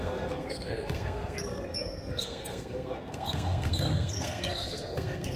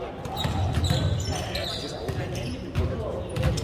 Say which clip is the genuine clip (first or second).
second